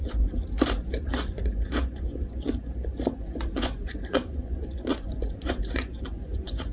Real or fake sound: fake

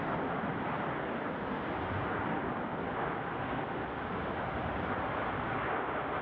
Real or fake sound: real